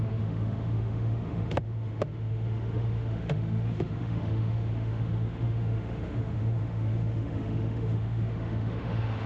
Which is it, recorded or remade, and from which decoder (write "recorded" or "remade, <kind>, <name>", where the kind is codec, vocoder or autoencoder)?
remade, autoencoder, DAC-VAE